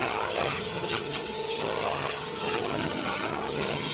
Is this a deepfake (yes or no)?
yes